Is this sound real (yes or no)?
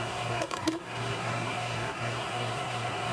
no